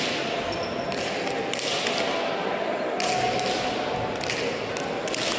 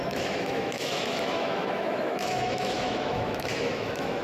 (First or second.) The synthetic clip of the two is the second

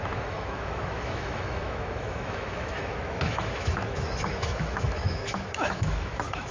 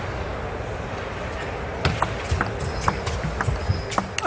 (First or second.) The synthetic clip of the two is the first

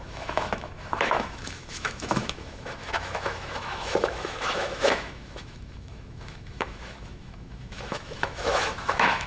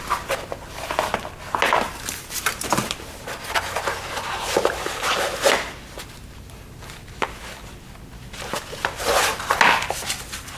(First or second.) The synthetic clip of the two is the first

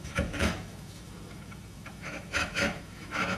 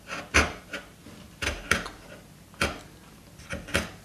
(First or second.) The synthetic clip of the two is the first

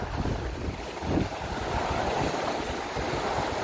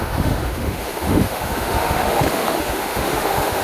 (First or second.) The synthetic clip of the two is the second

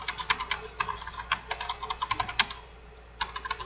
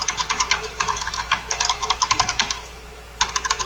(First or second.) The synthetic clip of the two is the second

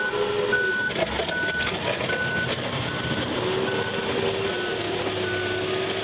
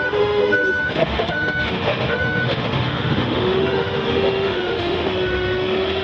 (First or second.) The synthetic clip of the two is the second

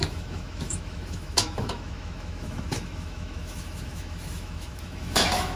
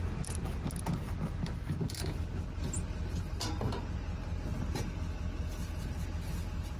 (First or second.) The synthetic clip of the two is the first